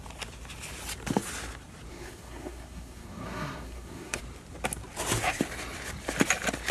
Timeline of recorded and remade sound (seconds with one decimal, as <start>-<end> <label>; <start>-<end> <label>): 0.0-1.9 recorded; 1.9-4.2 remade; 4.2-6.7 recorded